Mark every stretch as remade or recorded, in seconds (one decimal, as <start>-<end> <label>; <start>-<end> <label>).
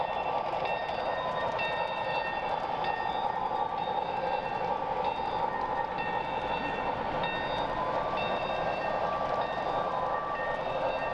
0.0-11.1 recorded